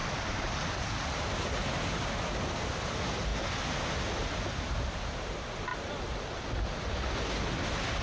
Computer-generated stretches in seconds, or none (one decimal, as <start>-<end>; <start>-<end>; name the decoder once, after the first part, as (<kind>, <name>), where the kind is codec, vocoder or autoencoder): none